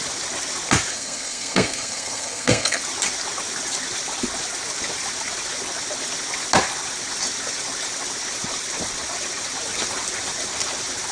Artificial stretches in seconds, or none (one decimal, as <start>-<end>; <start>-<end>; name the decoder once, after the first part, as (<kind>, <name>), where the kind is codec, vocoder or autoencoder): 0.9-2.8 (codec, SNAC)